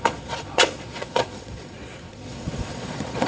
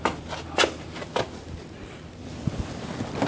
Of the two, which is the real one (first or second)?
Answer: second